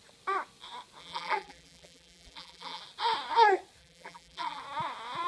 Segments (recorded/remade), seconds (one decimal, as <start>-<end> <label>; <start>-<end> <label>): 0.0-1.0 recorded; 1.0-2.8 remade; 2.8-3.8 recorded; 3.8-4.6 remade; 4.6-5.3 recorded